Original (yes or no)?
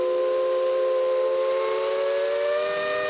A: yes